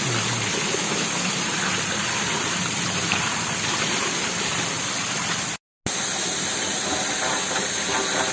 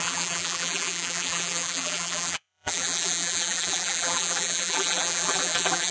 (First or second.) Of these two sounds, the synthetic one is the second